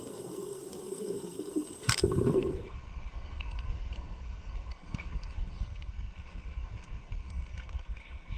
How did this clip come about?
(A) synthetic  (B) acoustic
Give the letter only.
A